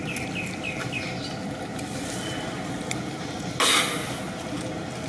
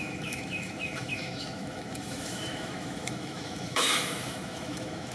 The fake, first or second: second